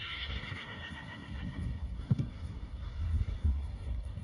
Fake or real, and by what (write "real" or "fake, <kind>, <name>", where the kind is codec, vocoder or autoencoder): fake, codec, SNAC